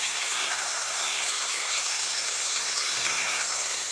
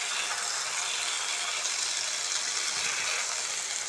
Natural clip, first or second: second